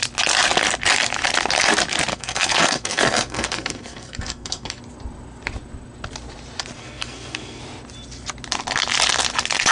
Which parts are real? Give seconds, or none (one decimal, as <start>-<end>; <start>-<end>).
0.0-2.1; 4.8-6.8; 7.6-9.7